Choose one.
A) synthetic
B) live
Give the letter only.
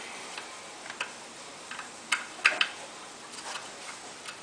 A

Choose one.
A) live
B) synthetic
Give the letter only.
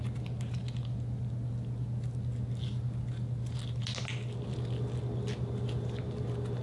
A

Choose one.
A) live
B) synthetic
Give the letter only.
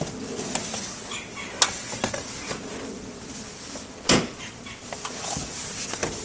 A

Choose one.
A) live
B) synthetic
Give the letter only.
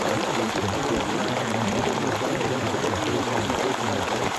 B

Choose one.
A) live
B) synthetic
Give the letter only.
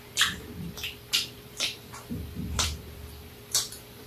B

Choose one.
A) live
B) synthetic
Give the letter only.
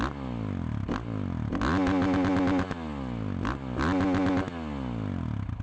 A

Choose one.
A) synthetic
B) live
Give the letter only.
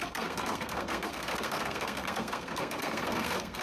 A